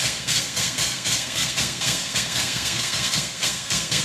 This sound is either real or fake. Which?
fake